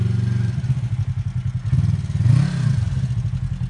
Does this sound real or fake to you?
real